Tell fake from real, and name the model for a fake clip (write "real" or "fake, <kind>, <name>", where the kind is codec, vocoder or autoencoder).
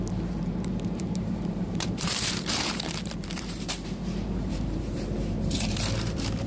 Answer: fake, vocoder, BigVGAN v2